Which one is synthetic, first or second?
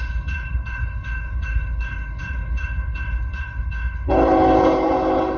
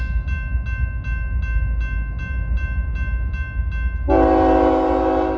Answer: first